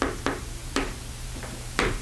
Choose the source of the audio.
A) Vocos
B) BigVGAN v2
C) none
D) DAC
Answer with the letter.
C